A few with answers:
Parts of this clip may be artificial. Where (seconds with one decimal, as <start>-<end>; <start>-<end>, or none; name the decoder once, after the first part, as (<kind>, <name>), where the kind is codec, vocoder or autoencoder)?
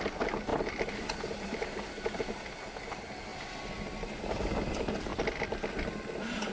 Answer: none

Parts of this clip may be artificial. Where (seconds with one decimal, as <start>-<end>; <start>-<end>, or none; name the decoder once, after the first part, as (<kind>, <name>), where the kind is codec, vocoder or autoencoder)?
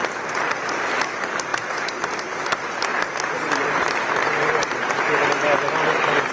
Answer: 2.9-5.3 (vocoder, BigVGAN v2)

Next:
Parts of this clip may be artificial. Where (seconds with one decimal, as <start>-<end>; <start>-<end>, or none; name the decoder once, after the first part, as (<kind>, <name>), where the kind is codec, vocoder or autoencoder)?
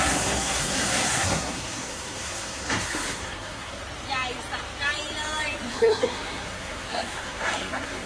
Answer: 0.0-3.8 (codec, SNAC); 5.7-8.1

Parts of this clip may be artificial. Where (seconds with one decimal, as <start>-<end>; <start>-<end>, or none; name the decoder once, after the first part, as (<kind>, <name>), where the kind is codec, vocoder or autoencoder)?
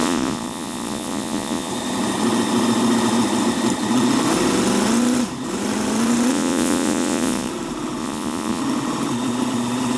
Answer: 0.0-1.7 (vocoder, Vocos); 6.3-7.5; 8.0-8.6